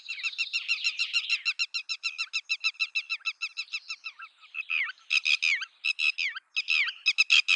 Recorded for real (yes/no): yes